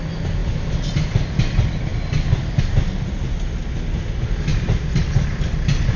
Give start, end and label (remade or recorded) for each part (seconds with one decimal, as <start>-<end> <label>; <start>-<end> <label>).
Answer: 0.0-6.0 recorded